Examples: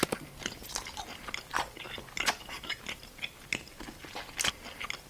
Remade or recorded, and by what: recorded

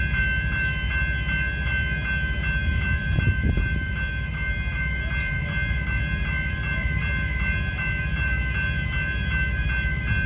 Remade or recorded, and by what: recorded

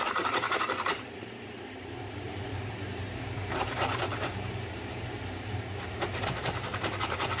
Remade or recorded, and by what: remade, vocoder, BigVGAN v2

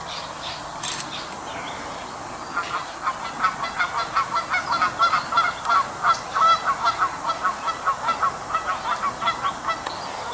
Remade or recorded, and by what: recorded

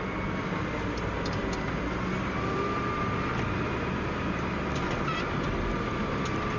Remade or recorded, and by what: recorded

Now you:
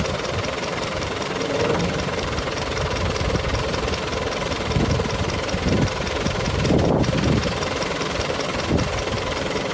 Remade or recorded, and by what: remade, vocoder, BigVGAN v2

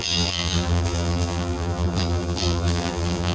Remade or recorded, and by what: remade, vocoder, BigVGAN v2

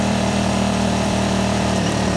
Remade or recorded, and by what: remade, vocoder, BigVGAN v2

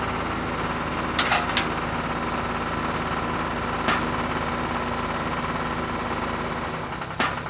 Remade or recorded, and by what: recorded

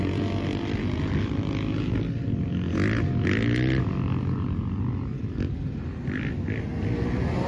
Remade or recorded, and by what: recorded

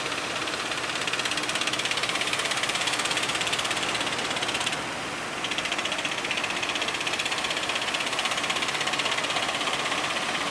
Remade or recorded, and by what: recorded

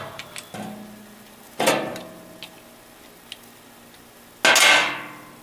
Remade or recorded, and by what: recorded